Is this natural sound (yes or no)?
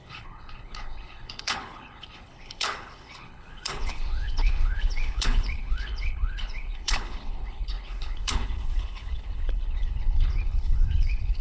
no